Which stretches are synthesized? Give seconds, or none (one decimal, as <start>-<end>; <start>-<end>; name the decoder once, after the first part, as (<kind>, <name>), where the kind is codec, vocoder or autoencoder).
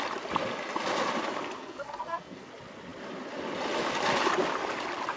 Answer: 1.6-2.5 (codec, SNAC)